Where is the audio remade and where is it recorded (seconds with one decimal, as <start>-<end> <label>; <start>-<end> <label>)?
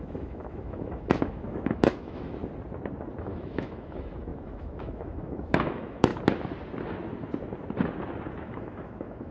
0.0-2.4 remade; 2.4-3.3 recorded; 3.3-6.1 remade; 6.1-8.4 recorded; 8.4-9.3 remade